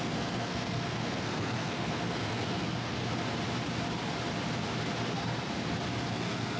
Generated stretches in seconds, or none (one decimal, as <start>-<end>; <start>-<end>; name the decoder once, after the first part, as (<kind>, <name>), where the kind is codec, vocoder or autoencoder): 0.0-3.0 (codec, SNAC); 6.1-6.6